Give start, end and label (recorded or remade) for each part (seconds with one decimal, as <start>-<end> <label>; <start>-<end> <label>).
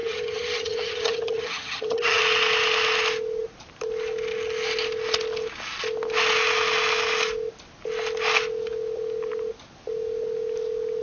0.0-2.2 remade; 2.2-11.0 recorded